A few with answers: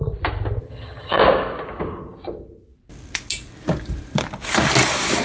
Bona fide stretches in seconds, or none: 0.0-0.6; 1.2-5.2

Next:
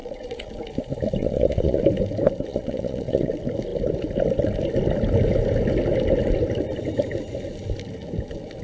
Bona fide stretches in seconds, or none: 0.5-1.2; 1.8-2.5; 3.3-8.6

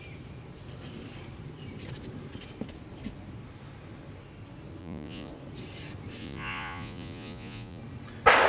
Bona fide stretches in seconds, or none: 0.0-4.8; 5.3-6.2; 7.8-8.5

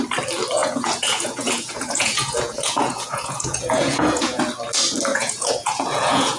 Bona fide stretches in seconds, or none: 0.0-0.6; 4.4-5.1

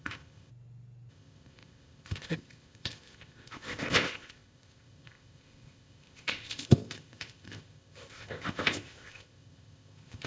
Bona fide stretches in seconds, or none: 0.5-1.1

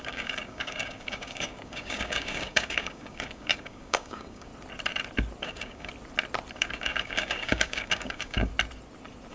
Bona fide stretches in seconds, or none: 4.5-5.4; 5.9-6.5; 8.5-9.3

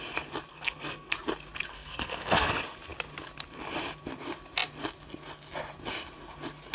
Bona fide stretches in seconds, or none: 0.0-0.5; 1.1-1.7; 2.5-6.7